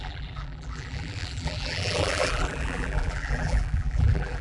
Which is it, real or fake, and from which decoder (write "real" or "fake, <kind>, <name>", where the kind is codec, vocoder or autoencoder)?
fake, vocoder, BigVGAN v2